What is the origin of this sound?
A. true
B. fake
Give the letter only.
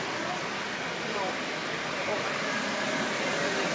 B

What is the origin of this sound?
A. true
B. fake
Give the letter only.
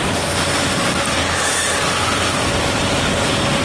A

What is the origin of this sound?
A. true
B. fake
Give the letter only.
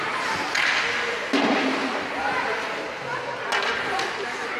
A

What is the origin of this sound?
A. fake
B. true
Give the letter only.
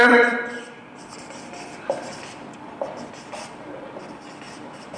A